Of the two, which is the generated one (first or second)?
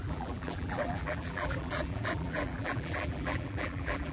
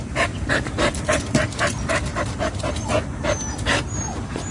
first